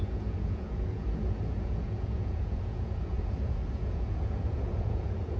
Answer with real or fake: fake